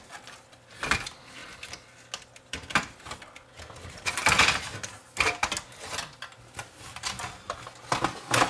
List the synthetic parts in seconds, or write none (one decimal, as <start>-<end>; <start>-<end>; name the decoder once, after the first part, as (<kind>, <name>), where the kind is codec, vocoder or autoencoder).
none